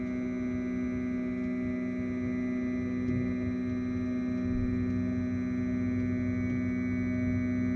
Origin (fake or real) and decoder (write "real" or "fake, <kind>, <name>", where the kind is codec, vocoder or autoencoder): real